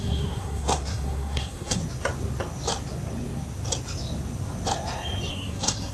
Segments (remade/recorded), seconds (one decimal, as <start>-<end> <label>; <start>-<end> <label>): 0.0-1.8 remade; 1.8-5.3 recorded; 5.3-5.9 remade